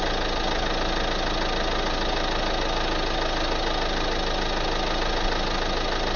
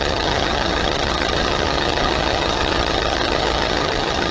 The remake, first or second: second